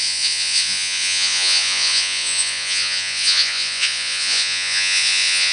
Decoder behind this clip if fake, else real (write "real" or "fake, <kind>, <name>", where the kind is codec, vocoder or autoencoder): fake, vocoder, Vocos